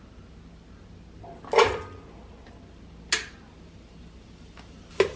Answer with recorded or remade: recorded